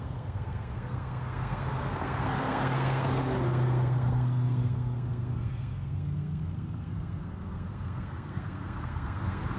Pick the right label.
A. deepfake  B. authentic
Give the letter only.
A